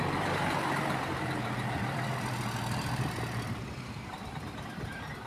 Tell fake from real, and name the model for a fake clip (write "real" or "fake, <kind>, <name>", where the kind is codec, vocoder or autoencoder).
fake, vocoder, BigVGAN v2